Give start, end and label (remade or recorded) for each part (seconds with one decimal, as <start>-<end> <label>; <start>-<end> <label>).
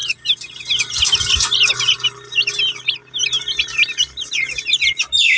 0.0-5.4 recorded